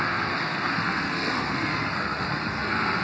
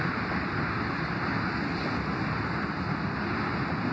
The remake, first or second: first